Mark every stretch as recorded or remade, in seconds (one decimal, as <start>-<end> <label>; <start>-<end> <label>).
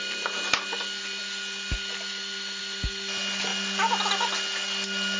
0.0-5.2 recorded